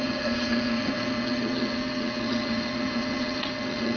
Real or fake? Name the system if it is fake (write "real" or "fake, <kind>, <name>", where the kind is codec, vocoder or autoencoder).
fake, vocoder, HiFi-GAN